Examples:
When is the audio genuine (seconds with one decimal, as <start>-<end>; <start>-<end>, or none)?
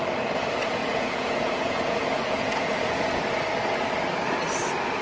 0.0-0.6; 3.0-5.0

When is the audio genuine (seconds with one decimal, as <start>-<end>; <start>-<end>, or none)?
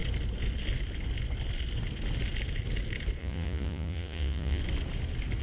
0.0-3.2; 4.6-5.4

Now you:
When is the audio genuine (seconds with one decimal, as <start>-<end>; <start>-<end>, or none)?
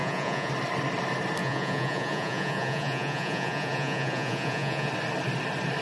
0.5-1.4; 4.9-5.8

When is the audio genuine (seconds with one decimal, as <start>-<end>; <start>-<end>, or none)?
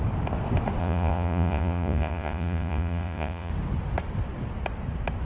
0.0-0.8; 3.5-5.2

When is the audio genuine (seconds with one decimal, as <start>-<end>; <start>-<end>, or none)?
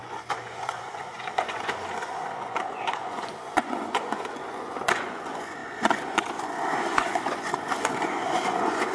none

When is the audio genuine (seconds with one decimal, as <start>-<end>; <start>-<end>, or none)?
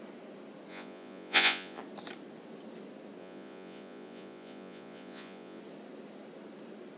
0.0-0.7; 1.8-3.2; 5.6-7.0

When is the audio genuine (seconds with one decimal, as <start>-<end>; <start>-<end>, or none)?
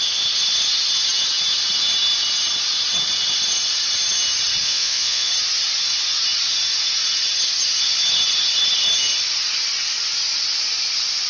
0.0-4.6; 5.3-11.3